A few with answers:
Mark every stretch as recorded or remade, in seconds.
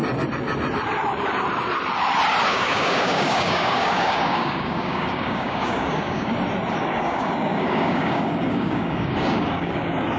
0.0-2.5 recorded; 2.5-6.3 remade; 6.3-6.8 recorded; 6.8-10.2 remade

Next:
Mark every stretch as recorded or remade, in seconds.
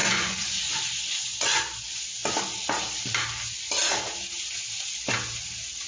0.0-1.6 remade; 1.6-5.9 recorded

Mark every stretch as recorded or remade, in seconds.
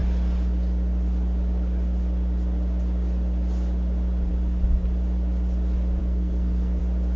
0.0-6.0 recorded; 6.0-6.8 remade; 6.8-7.2 recorded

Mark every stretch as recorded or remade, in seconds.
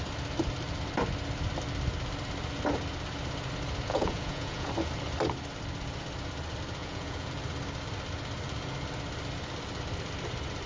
0.0-3.9 recorded; 3.9-4.7 remade; 4.7-6.8 recorded; 6.8-7.3 remade; 7.3-10.7 recorded